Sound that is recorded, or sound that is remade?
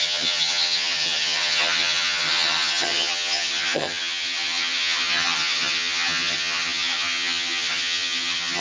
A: remade